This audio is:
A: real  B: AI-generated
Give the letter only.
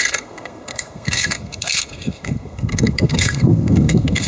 B